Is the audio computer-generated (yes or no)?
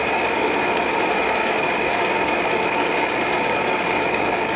yes